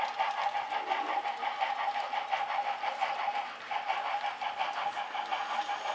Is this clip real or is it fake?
real